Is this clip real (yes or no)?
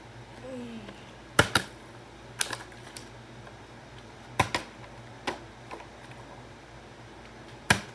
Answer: yes